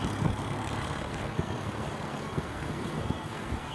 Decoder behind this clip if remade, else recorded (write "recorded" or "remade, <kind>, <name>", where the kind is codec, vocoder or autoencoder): remade, codec, SNAC